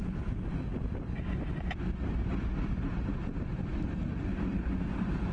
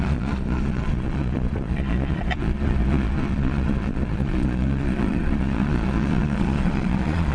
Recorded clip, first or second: first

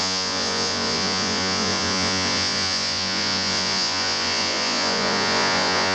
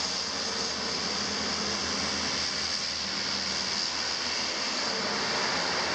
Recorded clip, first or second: second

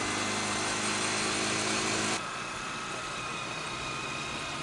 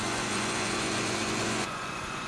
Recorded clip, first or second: first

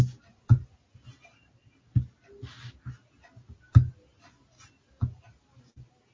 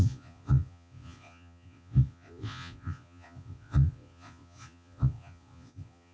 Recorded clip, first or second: first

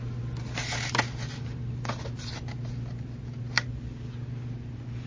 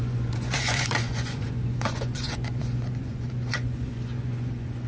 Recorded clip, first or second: first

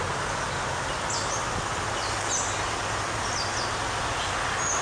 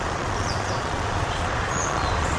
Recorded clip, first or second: first